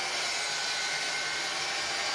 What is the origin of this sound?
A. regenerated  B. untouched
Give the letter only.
B